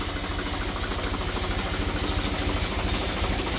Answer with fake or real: real